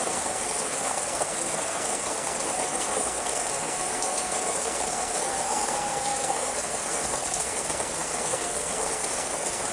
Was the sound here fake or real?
fake